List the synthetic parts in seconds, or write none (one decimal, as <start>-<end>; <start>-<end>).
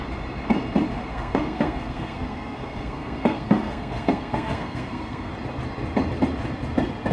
1.0-5.3